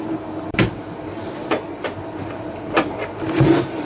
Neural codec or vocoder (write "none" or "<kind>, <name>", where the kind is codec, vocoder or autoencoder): vocoder, BigVGAN v2